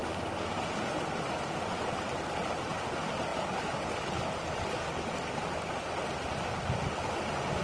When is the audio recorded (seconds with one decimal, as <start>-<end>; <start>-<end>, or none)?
0.0-7.6